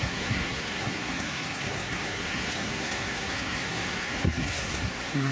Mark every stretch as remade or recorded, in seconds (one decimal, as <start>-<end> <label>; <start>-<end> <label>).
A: 0.0-5.3 remade